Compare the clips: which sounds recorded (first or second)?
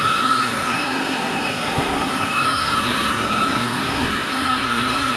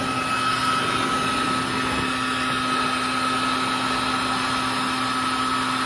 second